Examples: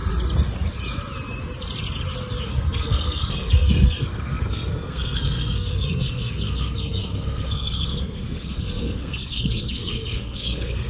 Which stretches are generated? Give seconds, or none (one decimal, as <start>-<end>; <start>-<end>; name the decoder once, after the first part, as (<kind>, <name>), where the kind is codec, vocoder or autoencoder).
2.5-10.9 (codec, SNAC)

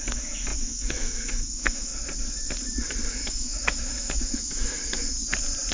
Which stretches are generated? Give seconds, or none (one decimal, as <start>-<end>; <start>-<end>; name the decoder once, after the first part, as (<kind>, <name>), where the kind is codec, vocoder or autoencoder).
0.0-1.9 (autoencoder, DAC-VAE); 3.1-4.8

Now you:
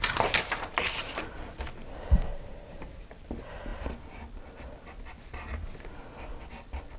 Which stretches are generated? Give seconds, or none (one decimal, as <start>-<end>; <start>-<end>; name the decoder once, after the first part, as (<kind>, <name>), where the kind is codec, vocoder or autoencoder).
2.3-3.1 (vocoder, BigVGAN v2)

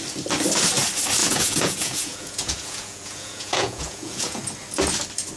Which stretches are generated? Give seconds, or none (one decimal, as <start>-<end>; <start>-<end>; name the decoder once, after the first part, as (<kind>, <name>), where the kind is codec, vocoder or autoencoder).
1.2-4.4 (vocoder, Vocos)